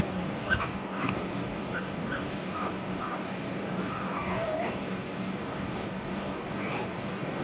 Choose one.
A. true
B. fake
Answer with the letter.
B